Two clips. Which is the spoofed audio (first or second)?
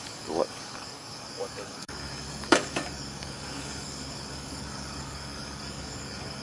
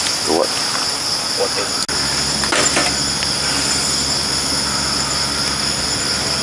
first